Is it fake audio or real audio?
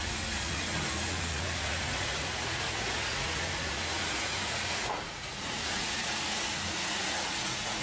fake